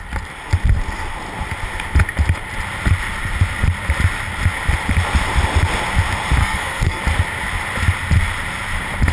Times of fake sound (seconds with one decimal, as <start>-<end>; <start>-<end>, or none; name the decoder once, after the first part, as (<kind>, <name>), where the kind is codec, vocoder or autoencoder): 6.4-7.0 (codec, SNAC)